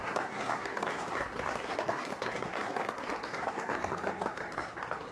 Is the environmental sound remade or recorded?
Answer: remade